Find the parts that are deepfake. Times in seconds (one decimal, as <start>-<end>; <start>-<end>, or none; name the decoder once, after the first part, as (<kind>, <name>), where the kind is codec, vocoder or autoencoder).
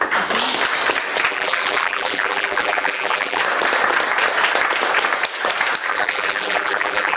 1.3-3.4 (vocoder, BigVGAN v2); 5.9-7.2